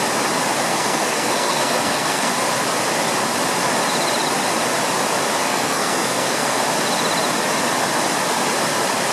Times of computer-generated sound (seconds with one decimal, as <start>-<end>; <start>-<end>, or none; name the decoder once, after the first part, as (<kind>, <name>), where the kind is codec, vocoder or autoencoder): 0.7-2.3 (codec, SNAC); 5.4-6.6